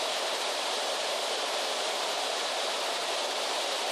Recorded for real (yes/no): no